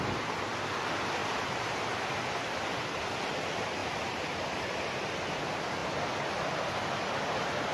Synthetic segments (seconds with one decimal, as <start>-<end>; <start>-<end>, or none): 1.2-2.5; 3.8-5.1

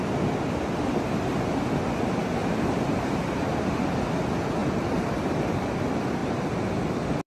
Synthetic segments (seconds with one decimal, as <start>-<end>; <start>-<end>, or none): 2.4-3.2; 4.6-5.2; 6.2-7.3

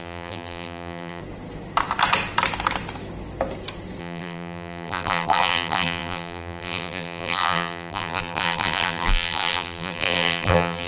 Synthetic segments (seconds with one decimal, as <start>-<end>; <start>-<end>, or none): 0.0-1.2; 4.0-10.9

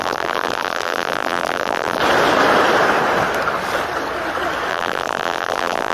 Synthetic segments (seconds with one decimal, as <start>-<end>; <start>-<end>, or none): 0.0-2.0; 4.7-5.9

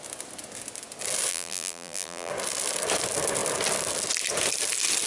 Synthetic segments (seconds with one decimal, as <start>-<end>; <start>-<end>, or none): 1.3-2.3